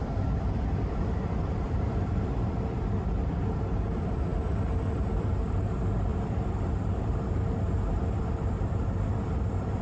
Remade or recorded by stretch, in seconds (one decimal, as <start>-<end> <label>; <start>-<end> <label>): 0.0-9.8 remade